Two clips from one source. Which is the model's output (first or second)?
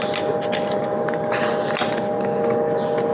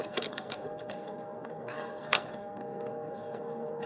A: second